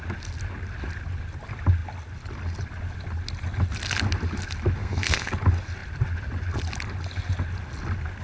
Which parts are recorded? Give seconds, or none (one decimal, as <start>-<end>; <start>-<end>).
0.0-4.8; 5.3-8.2